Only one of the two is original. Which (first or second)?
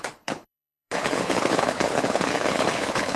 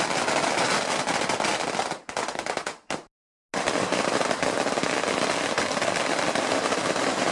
second